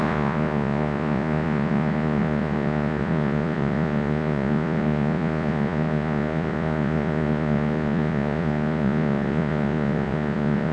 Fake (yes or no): yes